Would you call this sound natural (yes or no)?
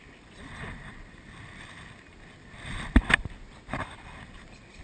yes